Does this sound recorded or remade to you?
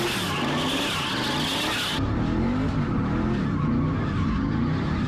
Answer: recorded